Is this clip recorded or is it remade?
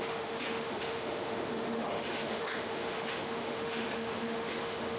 remade